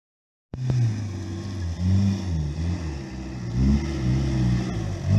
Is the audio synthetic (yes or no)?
no